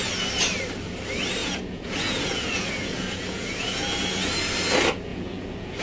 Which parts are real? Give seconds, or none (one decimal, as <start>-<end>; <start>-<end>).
0.0-1.4; 4.3-5.1